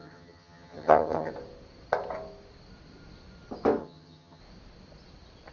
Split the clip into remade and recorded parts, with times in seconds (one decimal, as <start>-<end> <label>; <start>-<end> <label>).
0.0-1.3 remade; 1.3-3.8 recorded; 3.8-4.4 remade; 4.4-5.5 recorded